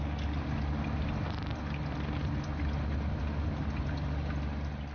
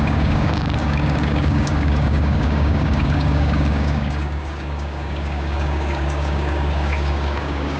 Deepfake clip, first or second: second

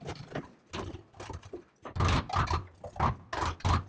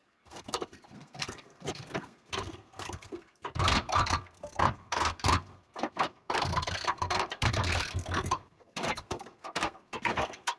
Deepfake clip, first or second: second